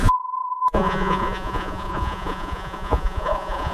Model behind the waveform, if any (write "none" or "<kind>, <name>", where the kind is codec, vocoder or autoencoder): vocoder, Vocos